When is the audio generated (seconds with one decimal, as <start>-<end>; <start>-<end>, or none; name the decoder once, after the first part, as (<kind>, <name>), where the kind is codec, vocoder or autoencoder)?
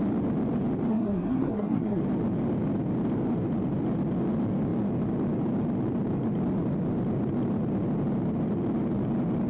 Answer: 0.9-2.0 (codec, SNAC)